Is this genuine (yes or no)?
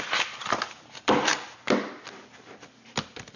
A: no